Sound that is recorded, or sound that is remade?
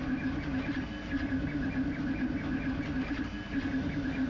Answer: recorded